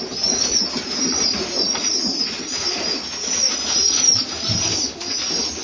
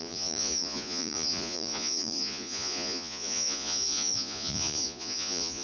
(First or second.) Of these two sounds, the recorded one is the first